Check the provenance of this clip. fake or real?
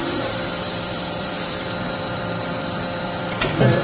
fake